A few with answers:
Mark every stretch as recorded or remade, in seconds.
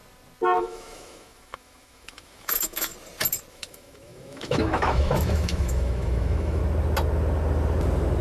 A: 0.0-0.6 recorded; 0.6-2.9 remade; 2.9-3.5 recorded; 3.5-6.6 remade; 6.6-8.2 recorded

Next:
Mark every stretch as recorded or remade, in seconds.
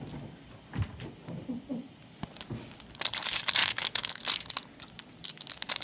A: 0.0-3.6 recorded; 3.6-4.2 remade; 4.2-5.8 recorded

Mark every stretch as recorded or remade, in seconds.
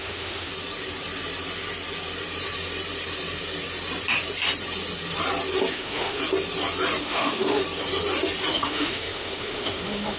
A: 0.0-0.5 remade; 0.5-5.7 recorded; 5.7-6.2 remade; 6.2-7.0 recorded; 7.0-7.6 remade; 7.6-8.5 recorded; 8.5-10.2 remade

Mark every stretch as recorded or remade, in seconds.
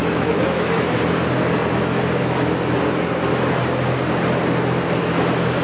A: 0.0-1.0 remade; 1.0-5.6 recorded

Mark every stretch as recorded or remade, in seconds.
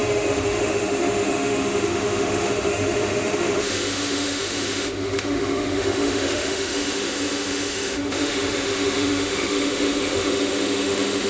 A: 0.0-11.3 remade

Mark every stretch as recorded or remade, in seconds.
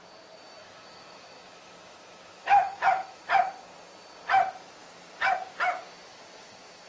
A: 0.0-0.6 recorded; 0.6-3.2 remade; 3.2-6.9 recorded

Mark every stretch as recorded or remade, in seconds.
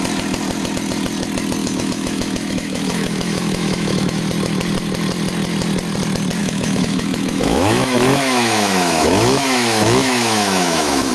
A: 0.0-1.6 recorded; 1.6-4.2 remade; 4.2-6.4 recorded; 6.4-11.1 remade